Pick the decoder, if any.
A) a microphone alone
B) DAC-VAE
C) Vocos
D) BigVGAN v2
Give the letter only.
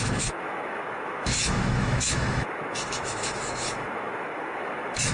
B